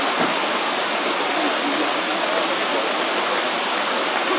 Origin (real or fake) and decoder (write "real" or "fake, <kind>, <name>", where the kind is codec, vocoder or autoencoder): real